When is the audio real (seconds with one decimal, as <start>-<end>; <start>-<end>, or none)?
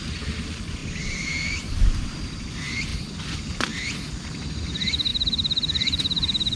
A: 0.0-0.8; 2.1-5.1